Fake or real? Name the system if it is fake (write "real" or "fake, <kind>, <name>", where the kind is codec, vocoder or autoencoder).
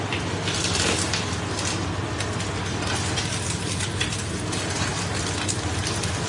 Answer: real